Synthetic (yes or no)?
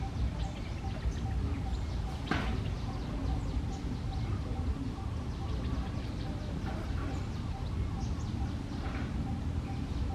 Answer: no